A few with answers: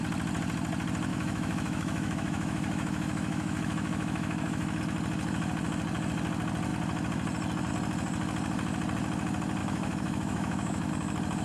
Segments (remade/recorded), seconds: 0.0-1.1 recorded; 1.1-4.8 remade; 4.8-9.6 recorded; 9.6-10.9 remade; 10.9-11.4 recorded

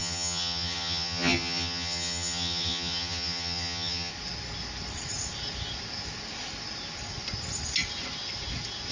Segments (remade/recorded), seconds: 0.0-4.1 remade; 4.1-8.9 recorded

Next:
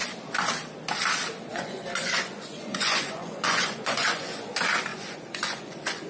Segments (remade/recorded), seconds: 0.0-1.5 recorded; 1.5-4.5 remade; 4.5-4.9 recorded; 4.9-6.1 remade

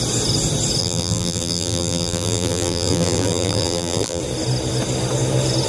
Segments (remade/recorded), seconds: 0.0-0.8 recorded; 0.8-4.2 remade; 4.2-5.7 recorded

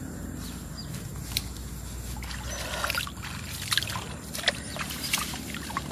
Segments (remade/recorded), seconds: 0.0-1.1 remade; 1.1-4.6 recorded; 4.6-5.9 remade